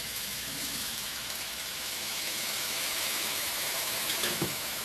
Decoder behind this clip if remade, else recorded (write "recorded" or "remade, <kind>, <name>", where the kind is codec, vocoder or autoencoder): remade, autoencoder, DAC-VAE